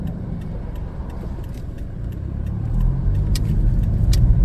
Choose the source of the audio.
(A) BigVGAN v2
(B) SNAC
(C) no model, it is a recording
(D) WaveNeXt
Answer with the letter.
A